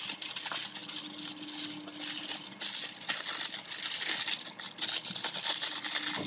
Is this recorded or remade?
recorded